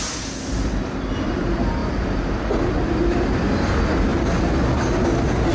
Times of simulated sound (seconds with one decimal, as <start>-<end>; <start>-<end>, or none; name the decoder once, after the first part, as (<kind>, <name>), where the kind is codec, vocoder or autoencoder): none